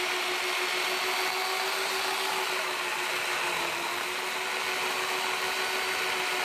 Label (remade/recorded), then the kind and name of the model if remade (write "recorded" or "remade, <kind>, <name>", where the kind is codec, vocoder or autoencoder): recorded